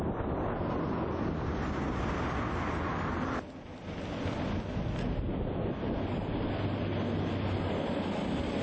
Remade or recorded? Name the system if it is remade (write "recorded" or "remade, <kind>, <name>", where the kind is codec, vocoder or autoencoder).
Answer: recorded